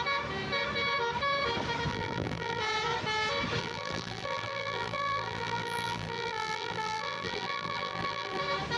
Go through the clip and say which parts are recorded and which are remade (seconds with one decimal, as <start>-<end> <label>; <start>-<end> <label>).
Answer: 0.0-1.9 recorded; 1.9-2.6 remade; 2.6-3.6 recorded; 3.6-8.4 remade; 8.4-8.8 recorded